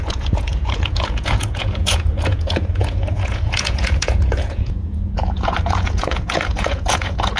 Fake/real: fake